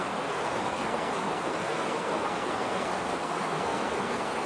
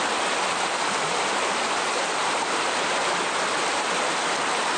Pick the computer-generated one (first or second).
first